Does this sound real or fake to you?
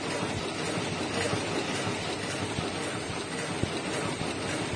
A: real